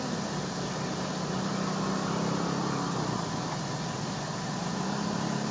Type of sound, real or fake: real